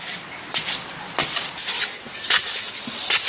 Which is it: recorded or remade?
recorded